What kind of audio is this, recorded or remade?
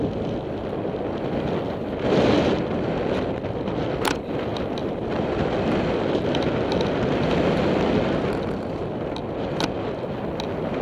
recorded